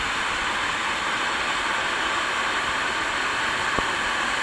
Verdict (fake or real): real